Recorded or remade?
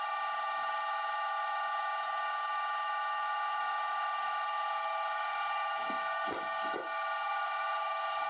remade